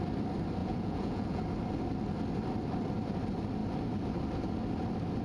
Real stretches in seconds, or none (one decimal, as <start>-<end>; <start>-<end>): 0.0-0.6; 1.4-5.2